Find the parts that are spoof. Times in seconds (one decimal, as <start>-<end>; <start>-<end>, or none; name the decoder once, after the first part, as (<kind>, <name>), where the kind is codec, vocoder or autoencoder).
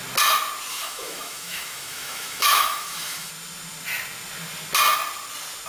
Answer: 0.7-3.3 (autoencoder, DAC-VAE)